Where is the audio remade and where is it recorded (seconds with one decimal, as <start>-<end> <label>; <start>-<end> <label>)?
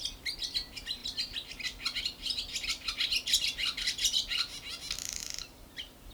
0.0-5.2 recorded; 5.2-6.1 remade